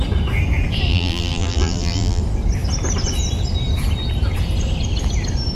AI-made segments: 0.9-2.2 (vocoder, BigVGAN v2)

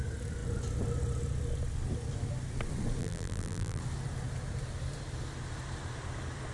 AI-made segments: 3.0-3.8 (vocoder, BigVGAN v2)

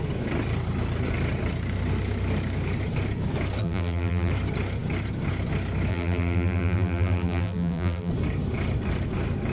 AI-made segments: 3.6-4.3 (vocoder, BigVGAN v2); 5.9-8.1